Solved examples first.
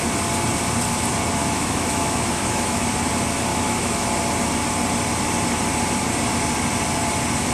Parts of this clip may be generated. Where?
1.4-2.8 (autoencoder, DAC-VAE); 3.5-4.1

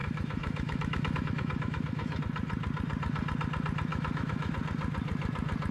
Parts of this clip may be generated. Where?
0.0-2.2 (autoencoder, DAC-VAE); 3.9-4.5

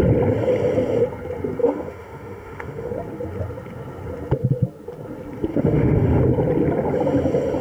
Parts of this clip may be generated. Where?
1.6-2.9 (autoencoder, DAC-VAE); 5.5-6.2